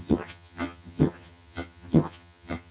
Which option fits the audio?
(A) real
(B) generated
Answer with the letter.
B